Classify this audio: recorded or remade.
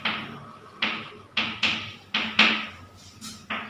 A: recorded